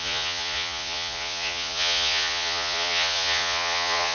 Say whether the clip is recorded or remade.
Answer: remade